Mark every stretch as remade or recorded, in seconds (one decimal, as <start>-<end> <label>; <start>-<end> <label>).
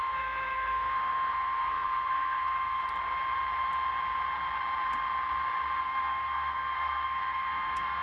0.0-2.8 remade; 2.8-5.8 recorded; 5.8-8.0 remade